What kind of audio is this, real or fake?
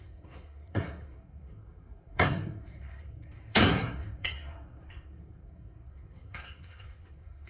fake